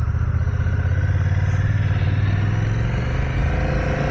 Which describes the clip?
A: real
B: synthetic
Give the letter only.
A